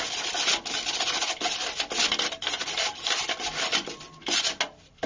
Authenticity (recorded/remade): recorded